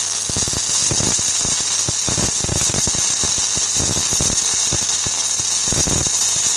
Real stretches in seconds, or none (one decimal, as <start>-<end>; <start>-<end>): 0.0-6.6